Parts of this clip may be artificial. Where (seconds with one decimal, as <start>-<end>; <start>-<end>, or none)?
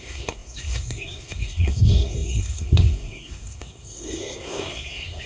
0.0-5.3